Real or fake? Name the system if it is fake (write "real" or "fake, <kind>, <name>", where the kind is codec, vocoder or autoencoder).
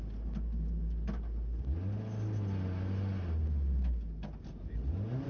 real